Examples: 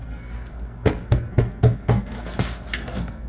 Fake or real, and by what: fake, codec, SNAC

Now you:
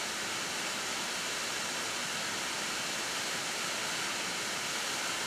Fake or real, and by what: real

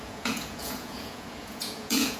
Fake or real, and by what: fake, vocoder, Vocos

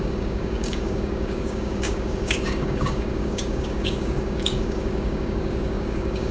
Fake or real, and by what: fake, codec, DAC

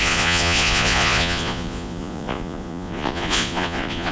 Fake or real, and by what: fake, vocoder, Vocos